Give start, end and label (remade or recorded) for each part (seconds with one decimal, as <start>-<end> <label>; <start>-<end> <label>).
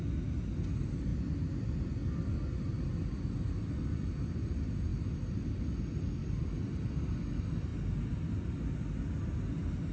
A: 0.0-9.9 recorded